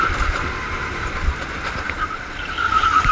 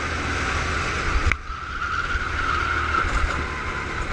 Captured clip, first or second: second